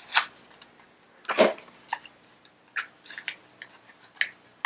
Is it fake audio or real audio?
real